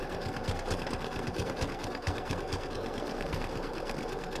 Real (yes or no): no